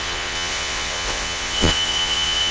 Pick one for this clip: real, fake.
fake